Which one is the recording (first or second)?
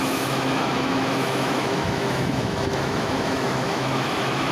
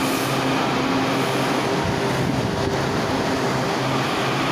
second